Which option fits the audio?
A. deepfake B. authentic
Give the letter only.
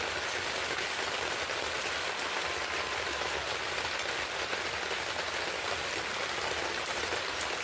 B